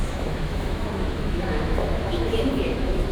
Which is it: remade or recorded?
remade